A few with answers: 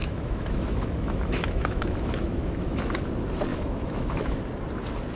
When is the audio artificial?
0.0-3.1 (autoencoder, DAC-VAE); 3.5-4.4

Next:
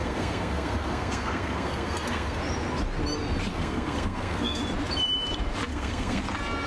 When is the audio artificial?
0.0-2.4 (codec, SNAC); 3.5-4.6; 5.7-6.2

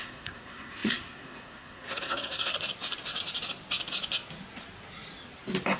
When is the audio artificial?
0.0-2.5 (codec, SNAC)

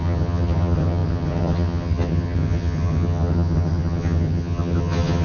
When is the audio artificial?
0.0-5.2 (vocoder, HiFi-GAN)